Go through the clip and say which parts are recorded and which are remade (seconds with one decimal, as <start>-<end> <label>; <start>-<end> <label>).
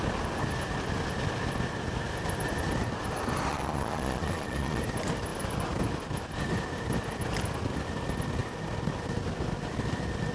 0.0-3.5 recorded; 3.5-4.8 remade; 4.8-10.3 recorded